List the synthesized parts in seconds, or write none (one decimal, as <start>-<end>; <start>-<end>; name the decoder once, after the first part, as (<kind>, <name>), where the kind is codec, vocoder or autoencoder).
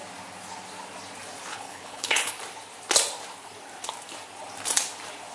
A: 1.5-2.3 (codec, HILCodec)